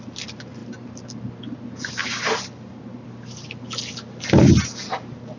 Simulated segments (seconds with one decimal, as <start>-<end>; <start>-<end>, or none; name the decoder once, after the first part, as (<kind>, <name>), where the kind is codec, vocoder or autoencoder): none